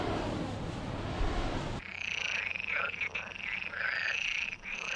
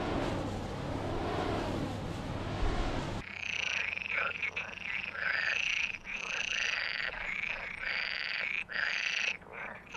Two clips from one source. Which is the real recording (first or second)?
second